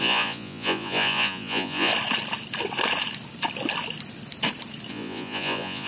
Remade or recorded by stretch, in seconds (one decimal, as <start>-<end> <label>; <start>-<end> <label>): 0.0-1.9 remade; 1.9-4.9 recorded; 4.9-5.9 remade